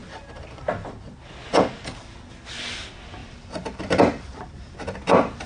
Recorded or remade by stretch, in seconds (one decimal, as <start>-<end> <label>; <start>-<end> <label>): 0.0-0.7 remade; 0.7-3.2 recorded; 3.2-4.6 remade; 4.6-5.5 recorded